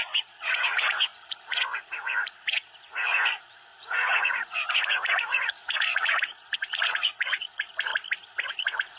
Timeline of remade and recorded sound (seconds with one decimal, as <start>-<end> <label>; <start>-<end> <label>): 0.0-7.9 remade; 7.9-8.5 recorded; 8.5-9.0 remade